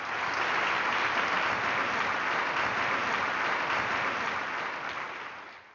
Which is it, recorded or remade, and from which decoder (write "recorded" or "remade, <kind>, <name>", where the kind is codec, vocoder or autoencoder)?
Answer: recorded